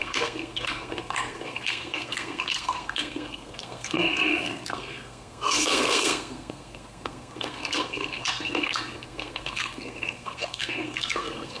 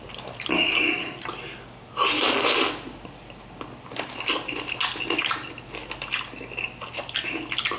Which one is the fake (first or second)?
first